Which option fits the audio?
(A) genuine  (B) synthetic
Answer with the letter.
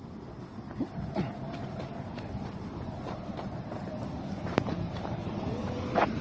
A